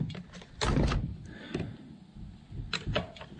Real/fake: real